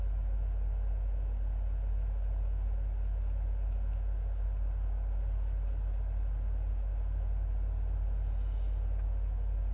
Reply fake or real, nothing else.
real